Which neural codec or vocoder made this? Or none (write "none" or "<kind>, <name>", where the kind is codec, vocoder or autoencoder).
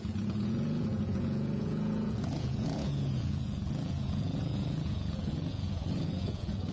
vocoder, Vocos